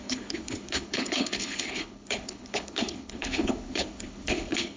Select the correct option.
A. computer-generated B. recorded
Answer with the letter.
A